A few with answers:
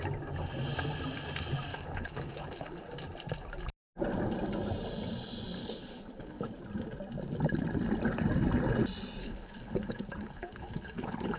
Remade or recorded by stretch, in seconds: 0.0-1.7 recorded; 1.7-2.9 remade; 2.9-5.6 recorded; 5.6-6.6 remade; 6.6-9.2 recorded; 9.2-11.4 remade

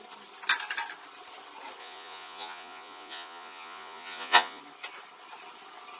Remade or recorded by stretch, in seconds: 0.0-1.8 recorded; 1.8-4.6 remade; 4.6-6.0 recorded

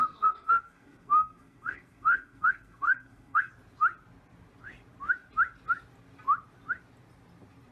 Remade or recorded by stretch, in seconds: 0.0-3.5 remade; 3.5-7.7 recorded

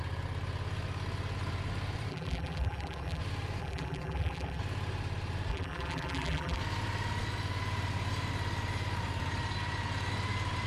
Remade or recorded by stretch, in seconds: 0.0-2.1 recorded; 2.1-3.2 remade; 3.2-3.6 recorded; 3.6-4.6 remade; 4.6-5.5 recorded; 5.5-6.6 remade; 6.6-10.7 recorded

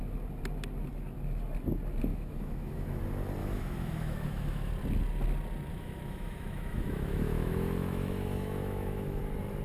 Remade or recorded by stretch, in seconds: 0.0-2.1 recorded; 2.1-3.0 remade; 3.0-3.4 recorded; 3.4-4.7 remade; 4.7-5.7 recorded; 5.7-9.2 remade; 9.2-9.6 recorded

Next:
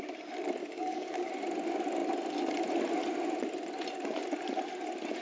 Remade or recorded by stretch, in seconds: 0.0-0.6 recorded; 0.6-1.3 remade; 1.3-5.2 recorded